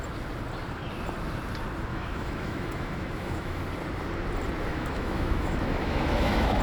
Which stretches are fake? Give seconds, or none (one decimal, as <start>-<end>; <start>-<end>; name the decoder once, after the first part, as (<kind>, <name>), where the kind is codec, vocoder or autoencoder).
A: 1.9-3.6 (autoencoder, DAC-VAE); 4.7-6.6